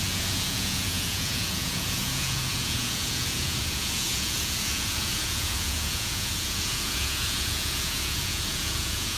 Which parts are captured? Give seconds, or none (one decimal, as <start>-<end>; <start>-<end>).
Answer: none